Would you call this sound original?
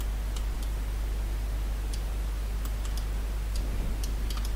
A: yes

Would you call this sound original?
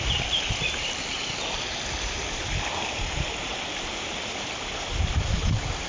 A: yes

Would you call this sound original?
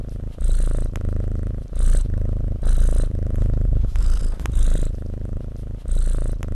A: no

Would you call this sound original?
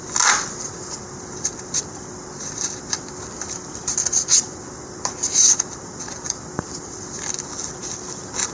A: no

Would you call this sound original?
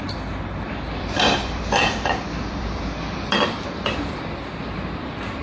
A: no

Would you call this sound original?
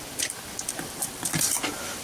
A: no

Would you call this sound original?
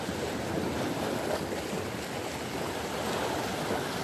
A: yes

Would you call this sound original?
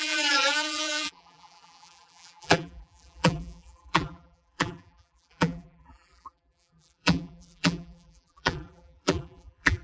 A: no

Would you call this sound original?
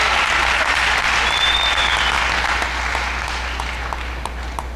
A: yes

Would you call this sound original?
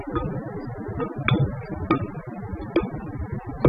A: yes